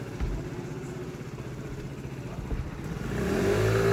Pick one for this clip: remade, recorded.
recorded